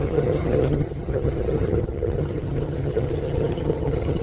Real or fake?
fake